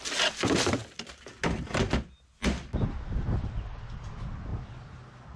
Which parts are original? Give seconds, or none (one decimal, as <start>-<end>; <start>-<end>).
0.0-5.4